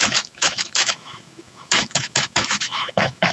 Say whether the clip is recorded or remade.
remade